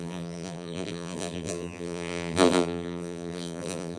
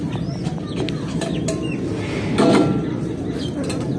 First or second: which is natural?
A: second